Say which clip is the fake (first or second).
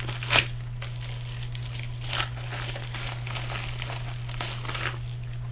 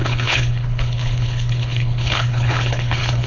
second